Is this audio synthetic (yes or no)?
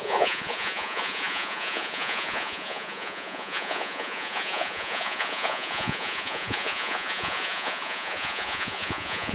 yes